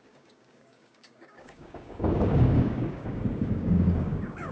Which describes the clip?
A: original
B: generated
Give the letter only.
B